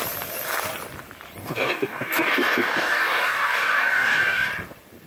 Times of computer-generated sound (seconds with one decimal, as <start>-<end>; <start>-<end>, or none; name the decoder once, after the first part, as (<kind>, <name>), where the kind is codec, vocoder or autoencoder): 1.4-4.5 (codec, DAC)